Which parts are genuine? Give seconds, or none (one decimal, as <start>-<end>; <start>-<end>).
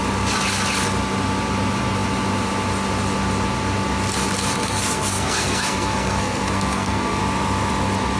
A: 0.0-4.6; 7.2-8.2